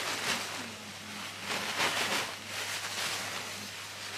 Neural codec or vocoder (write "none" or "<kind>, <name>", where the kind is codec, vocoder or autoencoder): none